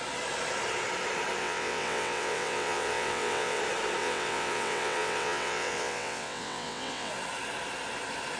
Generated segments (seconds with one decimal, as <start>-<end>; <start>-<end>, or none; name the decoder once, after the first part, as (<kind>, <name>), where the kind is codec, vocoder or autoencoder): 1.4-3.6 (vocoder, WaveNeXt); 4.0-7.1